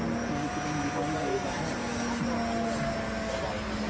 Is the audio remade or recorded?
recorded